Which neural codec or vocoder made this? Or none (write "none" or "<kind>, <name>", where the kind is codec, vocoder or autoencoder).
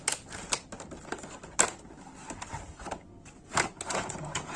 none